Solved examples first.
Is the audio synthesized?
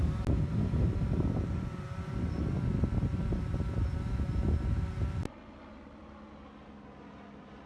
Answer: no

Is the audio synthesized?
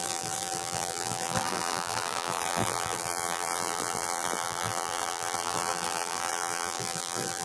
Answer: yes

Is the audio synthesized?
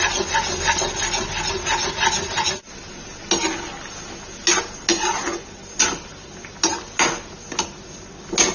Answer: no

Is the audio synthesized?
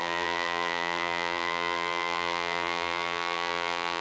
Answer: yes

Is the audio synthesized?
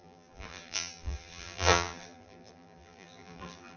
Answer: yes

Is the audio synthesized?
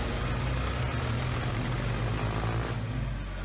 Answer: no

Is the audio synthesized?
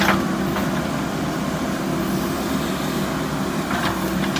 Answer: no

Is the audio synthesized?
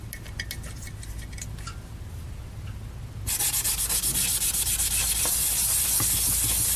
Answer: no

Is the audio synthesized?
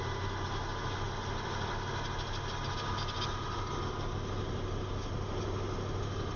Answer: no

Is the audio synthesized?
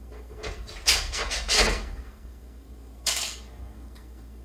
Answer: yes